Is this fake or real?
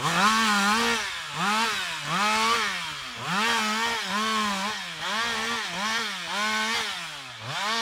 real